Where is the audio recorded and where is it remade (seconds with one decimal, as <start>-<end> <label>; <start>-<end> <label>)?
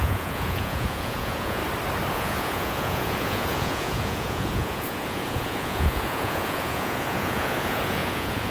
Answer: 0.0-1.6 remade; 1.6-2.1 recorded; 2.1-8.5 remade